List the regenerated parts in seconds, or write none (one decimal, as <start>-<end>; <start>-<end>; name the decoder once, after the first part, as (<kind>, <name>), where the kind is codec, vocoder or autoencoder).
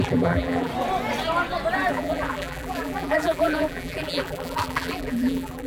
0.0-0.7 (vocoder, BigVGAN v2); 1.9-5.7